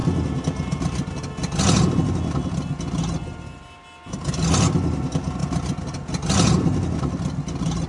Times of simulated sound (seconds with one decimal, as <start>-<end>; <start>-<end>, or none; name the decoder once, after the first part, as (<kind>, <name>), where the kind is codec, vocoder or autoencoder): none